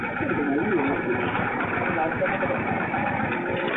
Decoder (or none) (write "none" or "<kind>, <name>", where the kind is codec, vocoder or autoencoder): vocoder, BigVGAN v2